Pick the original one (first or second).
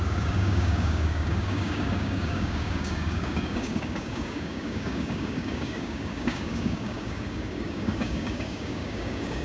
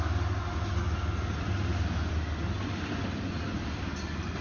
second